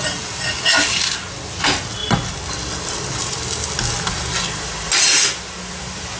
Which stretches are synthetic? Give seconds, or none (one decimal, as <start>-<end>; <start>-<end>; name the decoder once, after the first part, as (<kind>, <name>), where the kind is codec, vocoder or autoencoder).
none